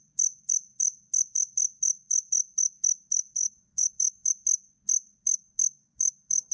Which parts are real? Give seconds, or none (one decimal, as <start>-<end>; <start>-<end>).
0.0-3.4; 4.3-5.2